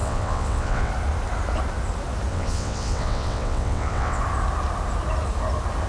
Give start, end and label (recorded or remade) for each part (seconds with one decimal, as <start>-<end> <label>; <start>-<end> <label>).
0.0-0.9 remade; 0.9-2.3 recorded; 2.3-4.2 remade; 4.2-5.9 recorded